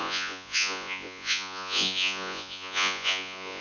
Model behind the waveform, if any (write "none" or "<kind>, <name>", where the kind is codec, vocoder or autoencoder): vocoder, Vocos